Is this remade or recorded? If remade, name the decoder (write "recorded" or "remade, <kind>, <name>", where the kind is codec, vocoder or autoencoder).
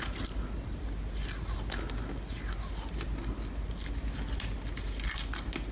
recorded